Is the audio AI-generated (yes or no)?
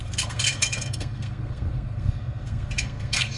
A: yes